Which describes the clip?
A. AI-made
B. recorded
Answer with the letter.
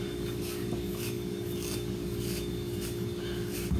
A